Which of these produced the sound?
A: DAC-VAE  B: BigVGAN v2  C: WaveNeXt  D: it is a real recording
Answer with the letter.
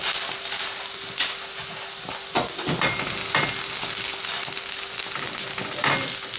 D